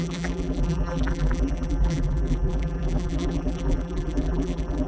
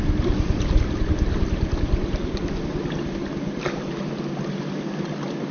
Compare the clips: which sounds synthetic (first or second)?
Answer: first